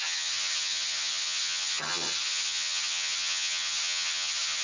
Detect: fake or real fake